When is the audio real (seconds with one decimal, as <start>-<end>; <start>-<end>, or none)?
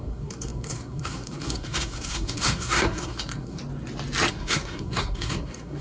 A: 3.6-4.3